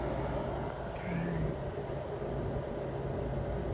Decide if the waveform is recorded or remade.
recorded